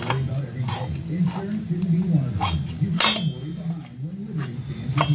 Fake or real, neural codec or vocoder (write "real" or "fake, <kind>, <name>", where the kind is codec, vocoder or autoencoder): real